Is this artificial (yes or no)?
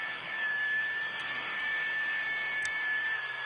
yes